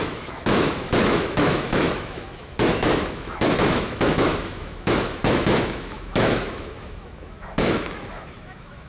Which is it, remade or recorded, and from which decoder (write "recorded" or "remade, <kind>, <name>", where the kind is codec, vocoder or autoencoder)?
remade, autoencoder, DAC-VAE